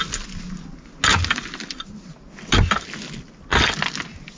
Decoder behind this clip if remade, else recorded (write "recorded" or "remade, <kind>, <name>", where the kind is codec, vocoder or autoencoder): recorded